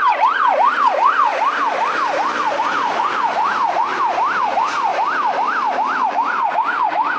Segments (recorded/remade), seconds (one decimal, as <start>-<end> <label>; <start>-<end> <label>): 0.0-1.3 remade; 1.3-2.5 recorded; 2.5-3.9 remade; 3.9-4.4 recorded; 4.4-4.9 remade; 4.9-6.0 recorded; 6.0-7.2 remade